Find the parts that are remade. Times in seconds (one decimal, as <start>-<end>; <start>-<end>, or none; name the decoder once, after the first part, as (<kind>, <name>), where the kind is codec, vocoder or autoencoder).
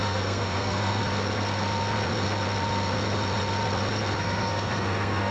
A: 0.0-1.0 (codec, SNAC); 4.2-5.3